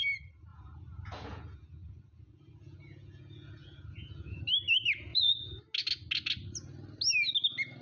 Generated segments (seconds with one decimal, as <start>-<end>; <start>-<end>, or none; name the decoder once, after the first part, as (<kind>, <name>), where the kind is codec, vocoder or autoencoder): 0.5-4.4 (vocoder, Vocos); 5.1-5.6